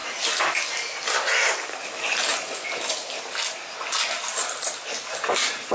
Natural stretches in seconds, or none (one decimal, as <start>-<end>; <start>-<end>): 0.0-5.7